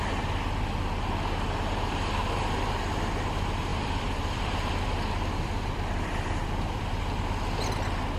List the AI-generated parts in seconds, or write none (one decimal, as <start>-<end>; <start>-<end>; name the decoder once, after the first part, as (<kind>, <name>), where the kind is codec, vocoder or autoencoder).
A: 3.7-7.0 (vocoder, BigVGAN v2)